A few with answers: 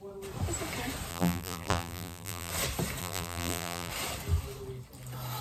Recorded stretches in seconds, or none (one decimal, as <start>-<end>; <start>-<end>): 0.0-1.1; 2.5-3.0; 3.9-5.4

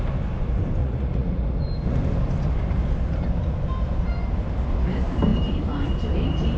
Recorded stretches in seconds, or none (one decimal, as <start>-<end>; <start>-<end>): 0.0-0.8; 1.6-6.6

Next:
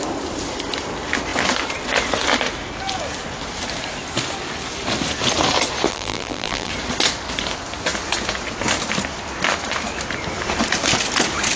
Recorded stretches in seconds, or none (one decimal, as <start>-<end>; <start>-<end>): 0.0-5.9; 6.7-11.6